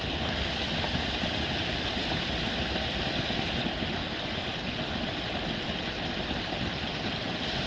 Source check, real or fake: real